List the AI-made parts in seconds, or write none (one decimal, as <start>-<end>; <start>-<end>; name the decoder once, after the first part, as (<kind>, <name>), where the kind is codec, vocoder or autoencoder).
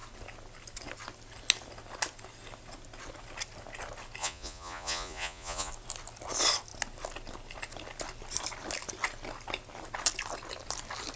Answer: 4.2-5.7 (vocoder, Vocos)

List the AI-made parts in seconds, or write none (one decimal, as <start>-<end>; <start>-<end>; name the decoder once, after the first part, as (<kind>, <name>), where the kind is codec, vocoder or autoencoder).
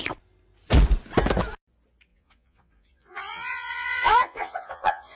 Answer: 2.1-5.2 (vocoder, Vocos)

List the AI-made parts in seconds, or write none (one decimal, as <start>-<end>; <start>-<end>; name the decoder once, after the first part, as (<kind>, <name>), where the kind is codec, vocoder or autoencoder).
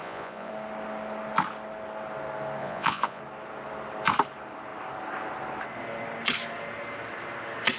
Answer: 0.0-0.5 (vocoder, Vocos); 2.6-3.2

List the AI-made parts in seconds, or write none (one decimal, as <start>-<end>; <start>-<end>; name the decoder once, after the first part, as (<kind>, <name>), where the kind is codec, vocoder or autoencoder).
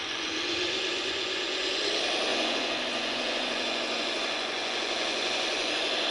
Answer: 0.0-1.8 (vocoder, Vocos); 2.3-6.1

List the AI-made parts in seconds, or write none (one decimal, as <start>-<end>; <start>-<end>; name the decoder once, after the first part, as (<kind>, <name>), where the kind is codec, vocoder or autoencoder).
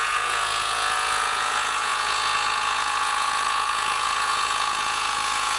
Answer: 0.0-5.6 (vocoder, Vocos)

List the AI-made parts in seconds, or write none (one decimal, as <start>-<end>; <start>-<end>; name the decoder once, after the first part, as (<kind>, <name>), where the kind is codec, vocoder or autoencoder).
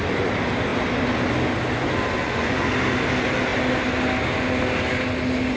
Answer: 2.2-2.7 (vocoder, Vocos)